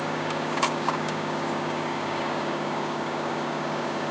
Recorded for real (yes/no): no